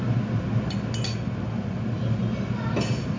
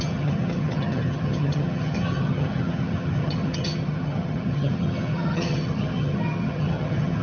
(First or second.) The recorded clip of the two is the first